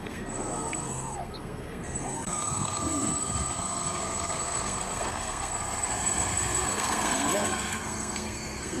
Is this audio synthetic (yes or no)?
yes